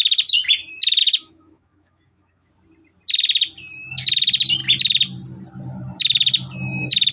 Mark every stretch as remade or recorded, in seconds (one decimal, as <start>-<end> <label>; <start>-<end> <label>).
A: 0.0-1.0 recorded; 1.0-2.5 remade; 2.5-7.1 recorded